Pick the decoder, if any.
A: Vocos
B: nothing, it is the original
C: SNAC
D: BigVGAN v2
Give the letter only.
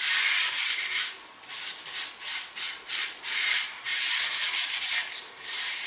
D